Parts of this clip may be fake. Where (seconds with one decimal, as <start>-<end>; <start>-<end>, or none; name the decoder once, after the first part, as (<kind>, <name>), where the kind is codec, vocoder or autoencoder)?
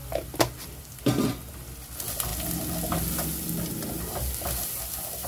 0.0-1.3 (vocoder, BigVGAN v2)